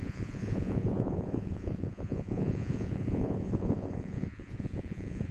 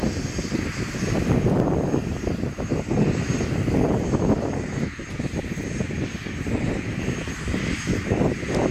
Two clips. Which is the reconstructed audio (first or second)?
first